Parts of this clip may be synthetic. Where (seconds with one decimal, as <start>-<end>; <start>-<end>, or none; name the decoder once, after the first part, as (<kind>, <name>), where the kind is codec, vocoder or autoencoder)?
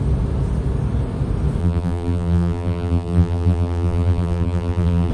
1.6-5.1 (vocoder, BigVGAN v2)